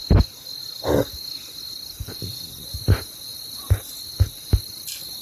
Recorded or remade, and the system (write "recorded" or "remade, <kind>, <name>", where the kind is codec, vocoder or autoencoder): recorded